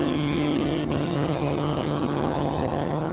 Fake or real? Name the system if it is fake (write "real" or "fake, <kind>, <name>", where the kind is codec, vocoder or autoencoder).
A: fake, vocoder, HiFi-GAN